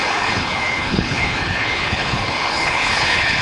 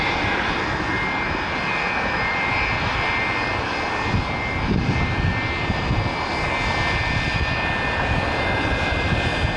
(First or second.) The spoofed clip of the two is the first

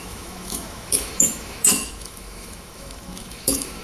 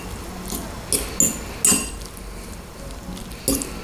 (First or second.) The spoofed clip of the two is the first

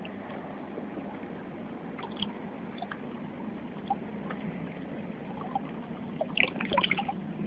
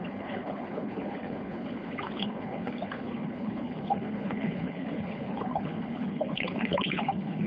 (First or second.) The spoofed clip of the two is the second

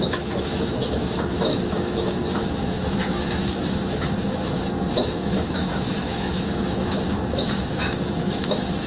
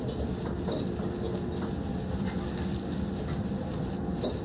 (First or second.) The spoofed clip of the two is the first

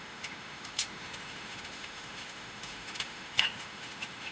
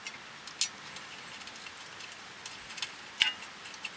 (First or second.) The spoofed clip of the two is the first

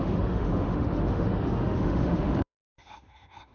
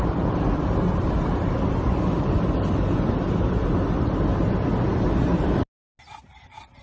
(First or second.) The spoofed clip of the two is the first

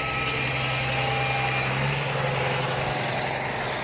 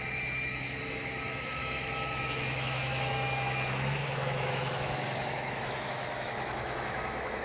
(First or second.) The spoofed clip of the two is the second